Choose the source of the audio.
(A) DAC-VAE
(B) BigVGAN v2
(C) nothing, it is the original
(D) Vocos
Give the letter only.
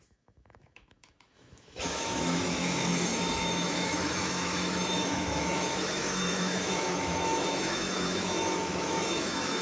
A